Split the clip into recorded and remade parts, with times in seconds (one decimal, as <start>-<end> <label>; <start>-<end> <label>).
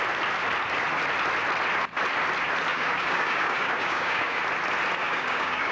0.0-2.7 recorded; 2.7-4.4 remade; 4.4-5.0 recorded; 5.0-5.7 remade